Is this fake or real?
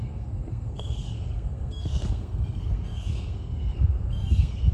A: fake